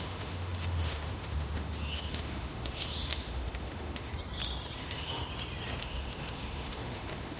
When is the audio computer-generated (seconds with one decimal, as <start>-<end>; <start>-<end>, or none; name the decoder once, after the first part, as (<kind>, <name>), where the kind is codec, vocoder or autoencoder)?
0.0-4.1 (autoencoder, DAC-VAE); 4.8-5.2; 5.8-7.4

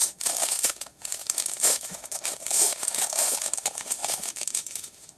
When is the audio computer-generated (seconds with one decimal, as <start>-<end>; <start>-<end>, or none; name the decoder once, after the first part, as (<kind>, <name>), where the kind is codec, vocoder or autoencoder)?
0.0-5.2 (autoencoder, DAC-VAE)

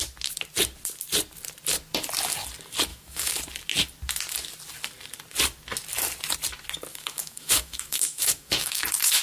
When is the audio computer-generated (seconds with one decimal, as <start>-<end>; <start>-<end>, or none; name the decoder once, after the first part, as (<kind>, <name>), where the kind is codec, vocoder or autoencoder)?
2.9-3.4 (autoencoder, DAC-VAE); 6.9-9.2

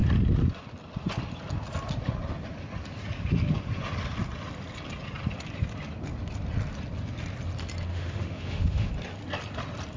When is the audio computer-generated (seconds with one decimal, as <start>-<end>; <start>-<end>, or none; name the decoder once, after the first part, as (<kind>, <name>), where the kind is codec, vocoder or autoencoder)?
7.9-8.9 (autoencoder, DAC-VAE)

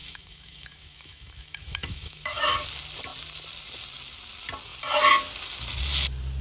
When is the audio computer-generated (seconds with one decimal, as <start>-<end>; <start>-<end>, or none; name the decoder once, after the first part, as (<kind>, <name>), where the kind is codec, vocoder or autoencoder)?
0.0-2.4 (autoencoder, DAC-VAE)

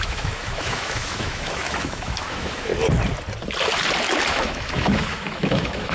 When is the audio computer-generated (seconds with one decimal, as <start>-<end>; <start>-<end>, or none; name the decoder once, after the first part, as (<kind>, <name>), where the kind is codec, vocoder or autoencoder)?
0.0-2.7 (autoencoder, DAC-VAE); 4.3-5.9

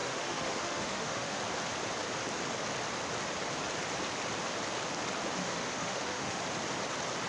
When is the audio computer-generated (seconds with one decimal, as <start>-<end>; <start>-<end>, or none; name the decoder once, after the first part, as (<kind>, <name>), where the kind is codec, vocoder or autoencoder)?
0.0-1.4 (autoencoder, DAC-VAE); 5.4-6.4

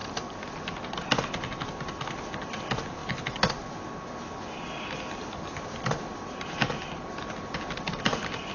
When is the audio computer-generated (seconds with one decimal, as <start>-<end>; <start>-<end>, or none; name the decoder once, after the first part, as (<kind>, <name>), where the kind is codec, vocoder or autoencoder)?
none